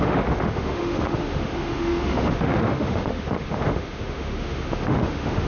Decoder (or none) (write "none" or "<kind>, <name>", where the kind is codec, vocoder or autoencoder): autoencoder, DAC-VAE